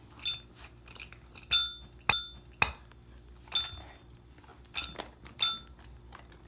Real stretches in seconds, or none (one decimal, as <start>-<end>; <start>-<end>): 0.0-6.5